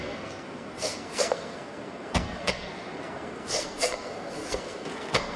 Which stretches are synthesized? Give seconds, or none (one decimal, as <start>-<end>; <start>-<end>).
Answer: 0.0-5.4